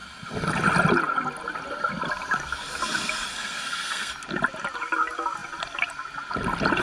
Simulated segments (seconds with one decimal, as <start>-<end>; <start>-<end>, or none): 3.3-4.1